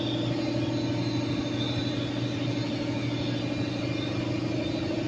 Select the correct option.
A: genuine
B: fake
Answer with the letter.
A